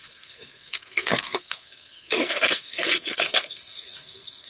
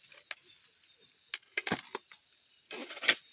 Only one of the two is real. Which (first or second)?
second